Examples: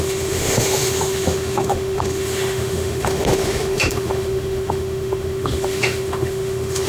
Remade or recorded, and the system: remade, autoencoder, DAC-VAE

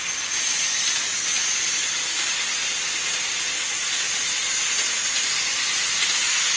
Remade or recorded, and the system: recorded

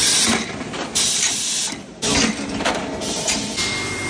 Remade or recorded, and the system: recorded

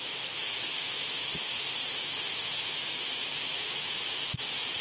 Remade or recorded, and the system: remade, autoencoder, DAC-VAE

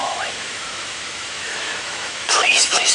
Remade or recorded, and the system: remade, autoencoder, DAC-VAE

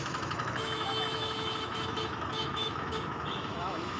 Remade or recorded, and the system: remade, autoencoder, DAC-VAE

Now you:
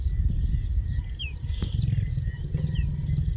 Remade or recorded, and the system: recorded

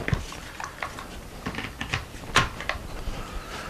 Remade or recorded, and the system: recorded